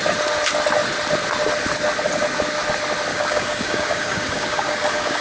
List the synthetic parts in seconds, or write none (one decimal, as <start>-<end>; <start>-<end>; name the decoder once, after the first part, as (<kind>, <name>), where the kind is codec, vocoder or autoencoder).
3.1-5.2 (codec, DAC)